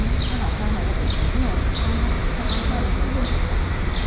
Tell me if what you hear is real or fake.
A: real